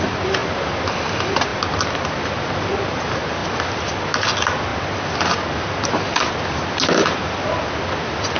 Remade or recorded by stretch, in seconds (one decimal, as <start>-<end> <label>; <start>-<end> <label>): 0.0-8.4 recorded